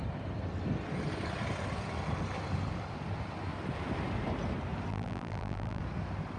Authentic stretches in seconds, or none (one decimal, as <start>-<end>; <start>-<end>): 0.0-4.9; 5.8-6.4